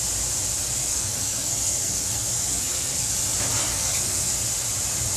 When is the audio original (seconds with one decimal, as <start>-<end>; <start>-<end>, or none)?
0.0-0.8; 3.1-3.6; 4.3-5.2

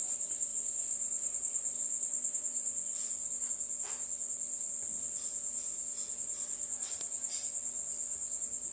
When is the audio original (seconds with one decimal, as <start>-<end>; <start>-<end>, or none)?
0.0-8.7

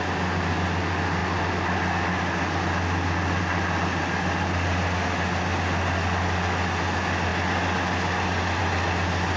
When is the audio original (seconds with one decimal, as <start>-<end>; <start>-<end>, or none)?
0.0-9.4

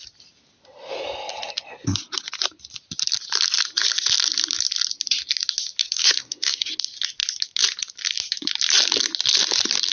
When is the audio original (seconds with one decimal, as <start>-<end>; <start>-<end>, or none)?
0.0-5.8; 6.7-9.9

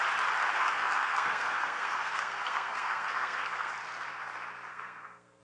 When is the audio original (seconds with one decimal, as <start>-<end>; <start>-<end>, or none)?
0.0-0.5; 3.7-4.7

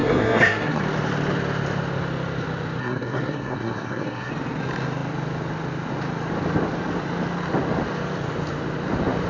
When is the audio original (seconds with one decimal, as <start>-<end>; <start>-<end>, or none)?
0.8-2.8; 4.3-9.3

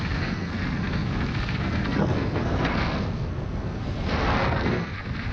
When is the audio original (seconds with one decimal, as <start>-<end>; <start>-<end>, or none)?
none

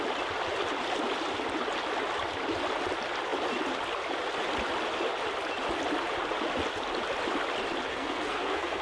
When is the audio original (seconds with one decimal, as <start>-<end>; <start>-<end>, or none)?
0.0-7.9